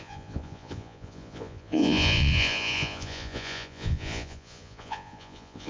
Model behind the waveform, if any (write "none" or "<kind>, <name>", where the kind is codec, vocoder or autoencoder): vocoder, Vocos